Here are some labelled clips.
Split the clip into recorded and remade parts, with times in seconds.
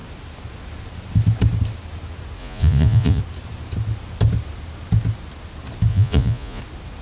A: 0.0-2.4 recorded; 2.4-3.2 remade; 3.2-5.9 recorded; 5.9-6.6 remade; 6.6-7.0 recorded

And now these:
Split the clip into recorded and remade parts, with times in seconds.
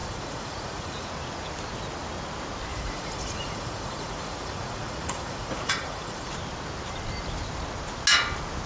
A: 0.0-1.1 remade; 1.1-2.7 recorded; 2.7-6.3 remade; 6.3-8.7 recorded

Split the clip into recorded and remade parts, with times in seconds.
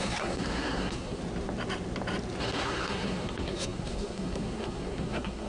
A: 0.0-1.2 remade; 1.2-2.4 recorded; 2.4-5.5 remade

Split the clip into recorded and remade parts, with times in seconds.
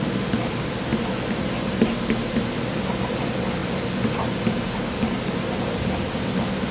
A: 0.0-6.7 recorded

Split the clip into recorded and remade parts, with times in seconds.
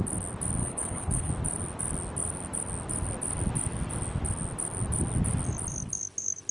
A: 0.0-0.6 recorded; 0.6-1.3 remade; 1.3-6.5 recorded